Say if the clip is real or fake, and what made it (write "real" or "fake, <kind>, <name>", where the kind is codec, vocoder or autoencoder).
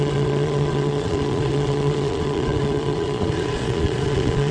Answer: fake, vocoder, Vocos